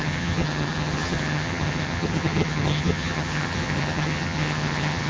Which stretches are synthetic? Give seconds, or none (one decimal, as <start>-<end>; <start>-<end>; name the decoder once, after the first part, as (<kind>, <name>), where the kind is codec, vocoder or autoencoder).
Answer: 0.0-5.1 (vocoder, HiFi-GAN)